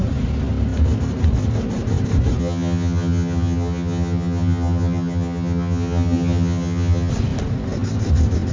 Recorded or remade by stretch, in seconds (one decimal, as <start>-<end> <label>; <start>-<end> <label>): 0.0-2.4 recorded; 2.4-7.1 remade; 7.1-8.5 recorded